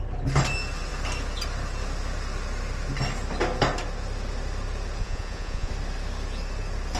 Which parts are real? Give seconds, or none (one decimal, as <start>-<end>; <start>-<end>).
0.0-5.0; 5.7-7.0